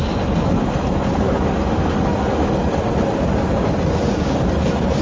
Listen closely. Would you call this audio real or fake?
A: real